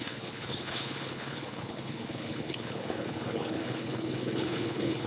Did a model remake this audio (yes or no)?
yes